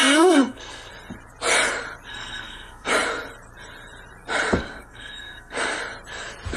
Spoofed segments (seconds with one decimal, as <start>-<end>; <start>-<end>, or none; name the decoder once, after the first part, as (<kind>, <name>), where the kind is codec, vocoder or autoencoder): 0.0-0.9 (codec, SNAC); 2.1-2.9; 4.6-5.8